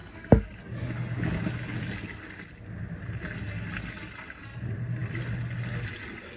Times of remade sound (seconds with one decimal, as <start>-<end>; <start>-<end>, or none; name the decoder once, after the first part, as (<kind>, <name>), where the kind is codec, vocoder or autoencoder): none